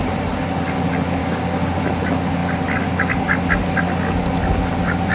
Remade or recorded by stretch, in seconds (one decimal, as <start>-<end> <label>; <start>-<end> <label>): 0.0-1.2 recorded; 1.2-1.8 remade; 1.8-5.1 recorded

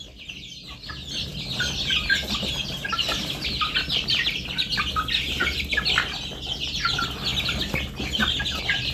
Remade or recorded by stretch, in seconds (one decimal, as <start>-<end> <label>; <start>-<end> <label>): 0.0-8.9 recorded

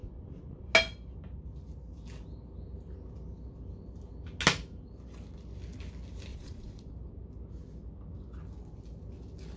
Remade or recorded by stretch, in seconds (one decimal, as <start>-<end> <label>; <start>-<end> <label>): 0.0-0.7 remade; 0.7-6.3 recorded; 6.3-6.9 remade; 6.9-9.6 recorded

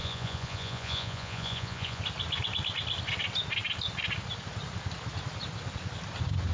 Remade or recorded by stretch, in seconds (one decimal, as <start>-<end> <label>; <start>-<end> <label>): 0.0-2.0 remade; 2.0-6.5 recorded

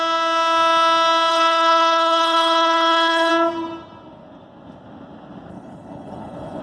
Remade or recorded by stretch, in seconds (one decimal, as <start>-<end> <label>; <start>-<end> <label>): 0.0-1.3 recorded; 1.3-3.3 remade; 3.3-5.5 recorded; 5.5-6.6 remade

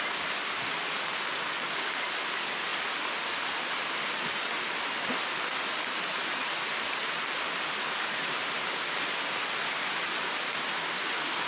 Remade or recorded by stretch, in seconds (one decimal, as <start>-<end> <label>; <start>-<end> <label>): 0.0-11.5 recorded

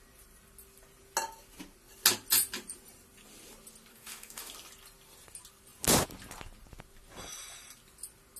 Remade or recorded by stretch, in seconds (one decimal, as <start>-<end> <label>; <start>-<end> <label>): 0.0-3.9 recorded; 3.9-4.5 remade; 4.5-8.4 recorded